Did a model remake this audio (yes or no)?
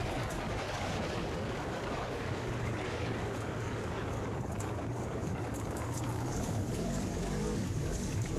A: yes